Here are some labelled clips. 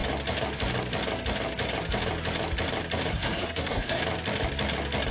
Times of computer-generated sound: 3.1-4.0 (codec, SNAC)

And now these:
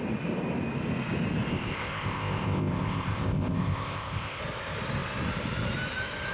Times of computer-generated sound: 1.5-4.4 (codec, ZipCodec)

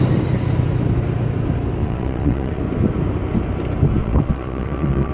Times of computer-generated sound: 1.8-2.6 (vocoder, Vocos); 4.0-5.1

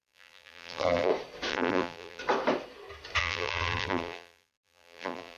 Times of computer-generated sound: 0.0-1.1 (vocoder, BigVGAN v2); 1.5-2.2; 3.2-5.4

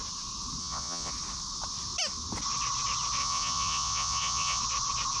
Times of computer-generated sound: 0.6-1.1 (vocoder, Vocos); 3.2-4.6

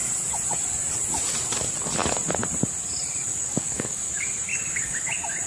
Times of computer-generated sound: 3.3-4.1 (codec, DAC); 4.5-5.1

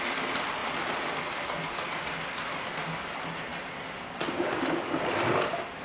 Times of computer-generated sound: none

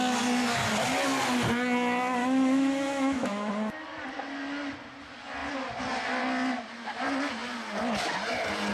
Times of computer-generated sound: 2.2-3.5 (autoencoder, DAC-VAE)